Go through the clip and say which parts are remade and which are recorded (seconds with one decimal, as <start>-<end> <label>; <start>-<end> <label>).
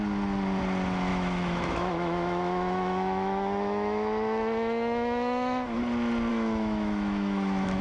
0.0-1.1 recorded; 1.1-5.8 remade; 5.8-6.3 recorded; 6.3-7.8 remade